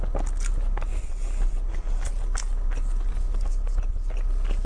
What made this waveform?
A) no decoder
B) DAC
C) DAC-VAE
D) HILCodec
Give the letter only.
A